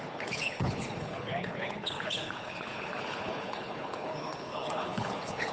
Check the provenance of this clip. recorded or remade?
remade